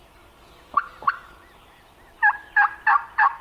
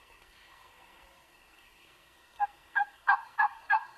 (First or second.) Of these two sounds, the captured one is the first